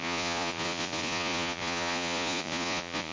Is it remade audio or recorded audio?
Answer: remade